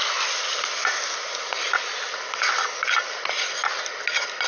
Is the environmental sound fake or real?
real